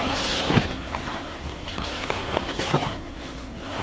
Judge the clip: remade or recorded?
remade